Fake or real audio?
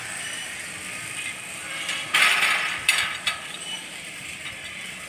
fake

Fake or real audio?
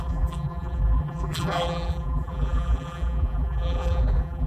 fake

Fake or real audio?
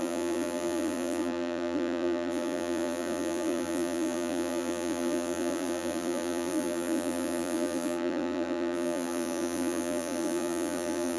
fake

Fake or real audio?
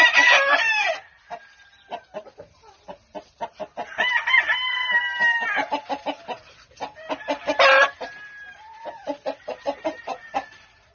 real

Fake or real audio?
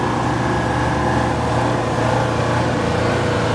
real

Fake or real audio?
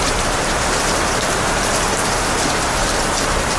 fake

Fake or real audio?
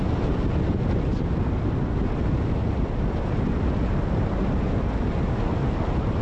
real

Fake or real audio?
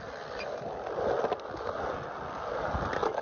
real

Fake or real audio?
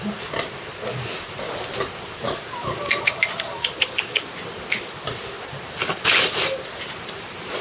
fake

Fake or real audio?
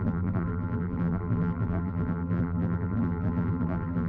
fake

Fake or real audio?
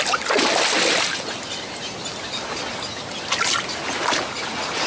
real